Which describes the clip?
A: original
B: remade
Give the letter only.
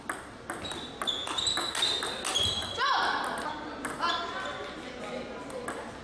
A